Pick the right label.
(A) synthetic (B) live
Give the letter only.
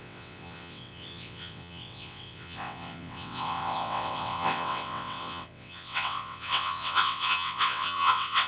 A